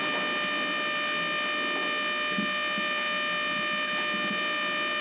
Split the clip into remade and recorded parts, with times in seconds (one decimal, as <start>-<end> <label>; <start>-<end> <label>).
0.0-5.0 recorded